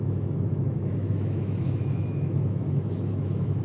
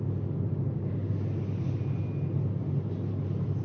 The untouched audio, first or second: second